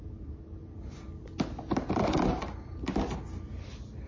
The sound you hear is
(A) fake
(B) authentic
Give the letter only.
B